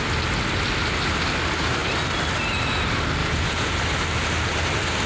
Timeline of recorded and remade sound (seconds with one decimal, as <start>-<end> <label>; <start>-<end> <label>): 0.0-3.2 recorded; 3.2-3.8 remade; 3.8-5.1 recorded